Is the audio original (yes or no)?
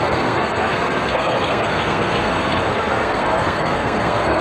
no